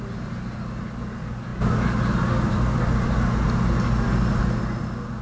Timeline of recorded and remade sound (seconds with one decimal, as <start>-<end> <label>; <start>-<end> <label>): 0.0-5.2 recorded